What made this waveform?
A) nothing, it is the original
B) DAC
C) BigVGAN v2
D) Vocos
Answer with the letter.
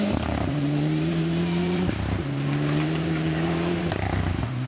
C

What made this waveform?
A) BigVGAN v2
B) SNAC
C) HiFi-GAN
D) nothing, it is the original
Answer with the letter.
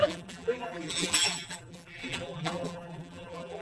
A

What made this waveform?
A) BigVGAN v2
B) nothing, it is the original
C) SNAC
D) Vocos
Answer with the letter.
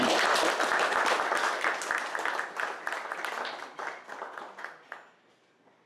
B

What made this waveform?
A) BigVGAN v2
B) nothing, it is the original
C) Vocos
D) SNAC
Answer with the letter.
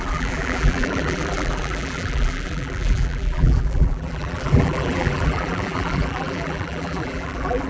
A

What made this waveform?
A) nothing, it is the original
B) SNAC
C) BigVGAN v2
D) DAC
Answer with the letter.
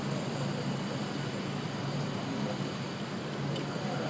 A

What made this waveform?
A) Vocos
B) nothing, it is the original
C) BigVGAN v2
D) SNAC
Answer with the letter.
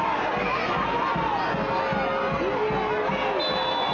B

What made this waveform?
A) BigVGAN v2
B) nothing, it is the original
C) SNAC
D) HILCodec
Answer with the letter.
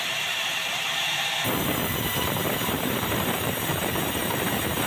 A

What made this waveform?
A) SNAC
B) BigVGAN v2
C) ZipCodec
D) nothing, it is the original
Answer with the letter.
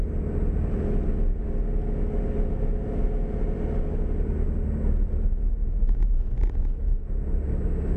D